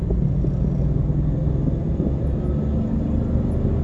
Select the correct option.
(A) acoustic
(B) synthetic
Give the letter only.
A